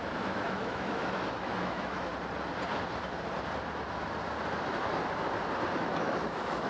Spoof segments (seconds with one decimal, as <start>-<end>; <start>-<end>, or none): 0.0-2.1; 5.8-6.7